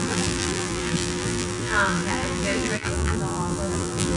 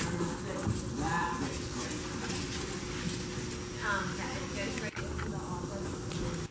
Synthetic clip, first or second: first